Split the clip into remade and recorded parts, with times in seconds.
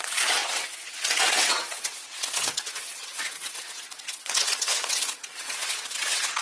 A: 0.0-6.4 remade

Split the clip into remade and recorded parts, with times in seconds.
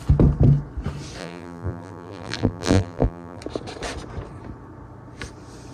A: 0.0-1.2 recorded; 1.2-3.4 remade; 3.4-5.7 recorded